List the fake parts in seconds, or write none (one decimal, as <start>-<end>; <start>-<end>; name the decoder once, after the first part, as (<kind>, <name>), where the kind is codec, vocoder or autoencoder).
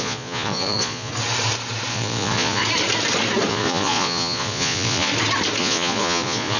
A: 0.0-1.1 (vocoder, Vocos); 1.9-2.6; 3.5-5.1; 5.6-6.6